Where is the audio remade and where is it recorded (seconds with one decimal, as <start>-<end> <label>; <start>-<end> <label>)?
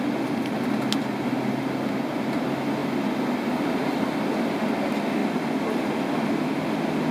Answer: 0.0-7.1 recorded